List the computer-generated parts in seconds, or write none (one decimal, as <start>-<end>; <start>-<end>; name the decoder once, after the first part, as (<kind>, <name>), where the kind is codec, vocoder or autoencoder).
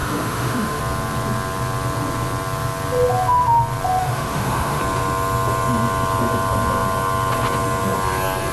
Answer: 0.0-0.8 (autoencoder, DAC-VAE); 4.0-4.8